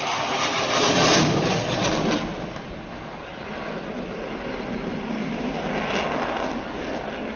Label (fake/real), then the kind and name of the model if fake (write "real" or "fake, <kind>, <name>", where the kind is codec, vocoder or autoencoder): real